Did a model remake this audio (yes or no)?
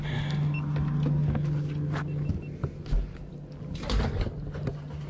no